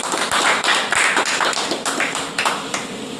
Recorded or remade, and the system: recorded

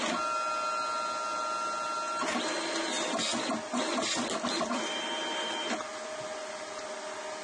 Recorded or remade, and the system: recorded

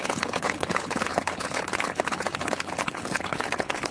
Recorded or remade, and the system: remade, codec, HILCodec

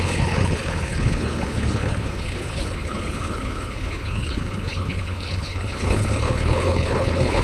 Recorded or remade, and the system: remade, codec, HILCodec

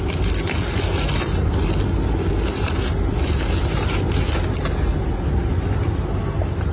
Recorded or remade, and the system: recorded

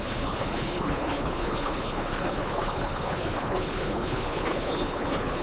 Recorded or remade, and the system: remade, codec, HILCodec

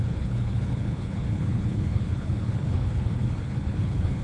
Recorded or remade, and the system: remade, codec, HILCodec